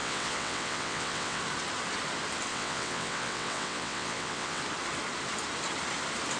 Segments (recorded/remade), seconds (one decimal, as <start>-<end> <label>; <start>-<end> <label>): 0.0-1.4 remade; 1.4-2.5 recorded; 2.5-4.6 remade; 4.6-6.4 recorded